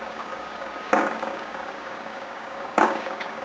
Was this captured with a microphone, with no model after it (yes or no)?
no